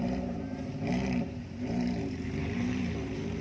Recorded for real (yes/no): no